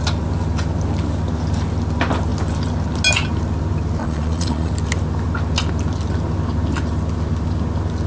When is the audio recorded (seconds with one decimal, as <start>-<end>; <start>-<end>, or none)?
0.0-4.0; 4.7-8.1

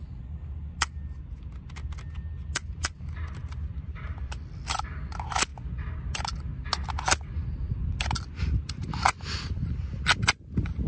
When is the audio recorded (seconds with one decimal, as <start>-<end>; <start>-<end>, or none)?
0.0-3.4; 4.9-10.9

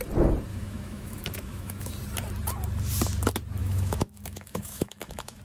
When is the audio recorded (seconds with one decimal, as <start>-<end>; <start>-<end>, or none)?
0.0-0.5; 1.9-3.6

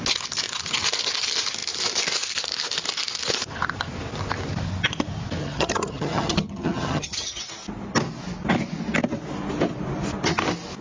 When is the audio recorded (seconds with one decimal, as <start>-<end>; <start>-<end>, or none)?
0.0-5.4; 7.4-10.8

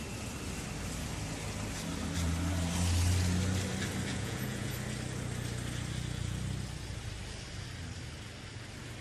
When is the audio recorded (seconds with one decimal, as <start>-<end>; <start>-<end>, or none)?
0.0-4.1; 4.7-9.0

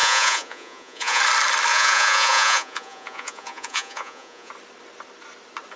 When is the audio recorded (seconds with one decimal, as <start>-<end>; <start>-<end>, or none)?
1.2-1.7; 4.5-5.8

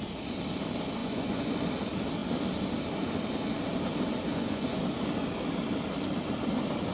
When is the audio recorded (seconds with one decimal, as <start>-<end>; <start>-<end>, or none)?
0.0-1.0; 1.5-4.3; 4.8-6.9

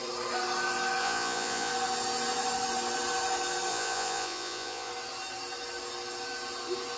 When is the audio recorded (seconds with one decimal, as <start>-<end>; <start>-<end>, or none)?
0.0-1.0; 1.7-3.7; 4.9-7.0